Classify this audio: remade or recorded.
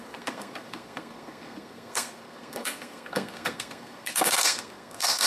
remade